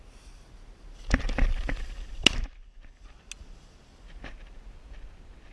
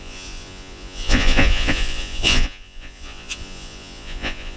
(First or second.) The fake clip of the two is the second